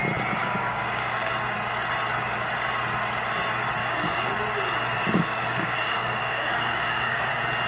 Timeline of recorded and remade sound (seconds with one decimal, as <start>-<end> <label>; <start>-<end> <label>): 0.0-0.4 recorded; 0.4-1.3 remade; 1.3-3.8 recorded; 3.8-4.3 remade; 4.3-5.0 recorded; 5.0-7.3 remade; 7.3-7.7 recorded